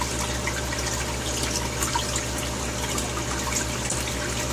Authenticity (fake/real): real